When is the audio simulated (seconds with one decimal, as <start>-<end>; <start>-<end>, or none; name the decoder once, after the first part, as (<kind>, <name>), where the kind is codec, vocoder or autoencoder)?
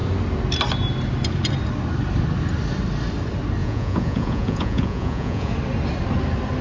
3.6-5.5 (vocoder, Vocos)